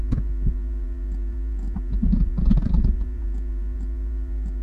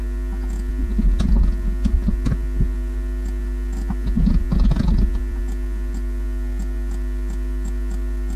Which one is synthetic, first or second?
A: first